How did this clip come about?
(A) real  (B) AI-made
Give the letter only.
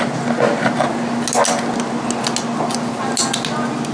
A